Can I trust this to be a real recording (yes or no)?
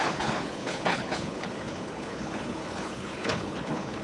no